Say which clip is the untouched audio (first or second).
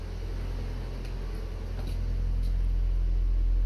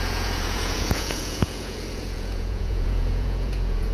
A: first